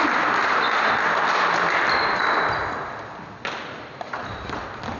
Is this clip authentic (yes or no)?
yes